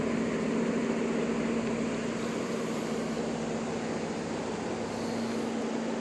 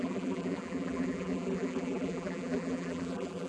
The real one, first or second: first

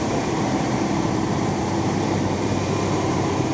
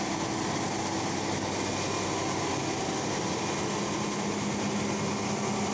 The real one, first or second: second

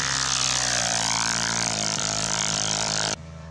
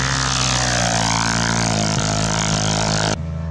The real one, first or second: second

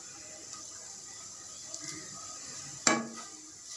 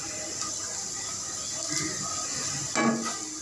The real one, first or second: second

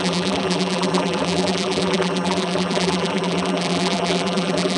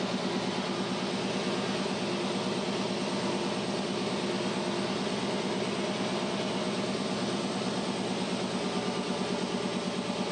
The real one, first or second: second